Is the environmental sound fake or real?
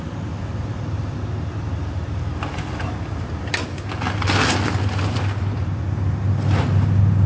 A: real